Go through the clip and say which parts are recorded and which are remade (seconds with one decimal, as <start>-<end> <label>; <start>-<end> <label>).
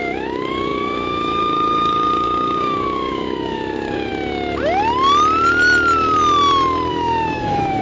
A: 0.0-4.1 remade; 4.1-6.9 recorded; 6.9-7.8 remade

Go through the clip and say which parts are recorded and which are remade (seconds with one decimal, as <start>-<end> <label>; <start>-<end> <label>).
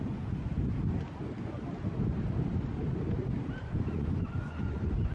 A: 0.0-0.5 remade; 0.5-3.6 recorded; 3.6-5.1 remade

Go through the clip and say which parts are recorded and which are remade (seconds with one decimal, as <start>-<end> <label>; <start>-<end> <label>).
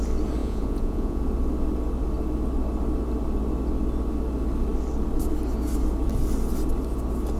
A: 0.0-0.4 recorded; 0.4-1.2 remade; 1.2-7.4 recorded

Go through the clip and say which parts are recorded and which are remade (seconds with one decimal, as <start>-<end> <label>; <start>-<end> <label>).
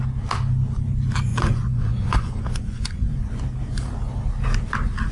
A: 0.0-1.3 recorded; 1.3-3.2 remade; 3.2-5.1 recorded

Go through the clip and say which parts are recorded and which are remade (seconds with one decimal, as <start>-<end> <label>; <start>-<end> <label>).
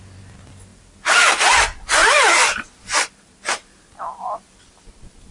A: 0.0-0.7 recorded; 0.7-1.3 remade; 1.3-2.0 recorded; 2.0-2.7 remade; 2.7-5.3 recorded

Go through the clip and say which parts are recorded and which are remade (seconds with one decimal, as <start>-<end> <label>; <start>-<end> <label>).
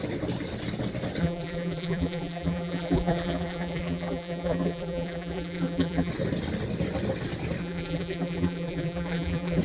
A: 0.0-1.2 recorded; 1.2-6.1 remade; 6.1-7.6 recorded; 7.6-9.6 remade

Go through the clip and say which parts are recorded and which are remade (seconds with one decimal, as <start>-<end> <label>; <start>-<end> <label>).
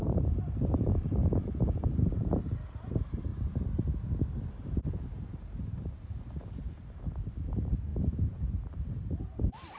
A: 0.0-3.3 remade; 3.3-4.5 recorded; 4.5-9.8 remade